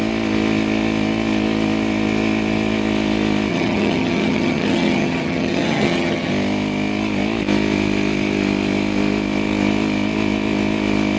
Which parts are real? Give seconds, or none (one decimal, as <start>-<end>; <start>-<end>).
0.0-3.5; 6.3-11.2